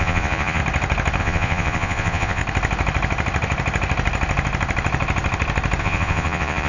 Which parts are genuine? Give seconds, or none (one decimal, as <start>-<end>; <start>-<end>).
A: 0.6-1.2; 2.4-5.8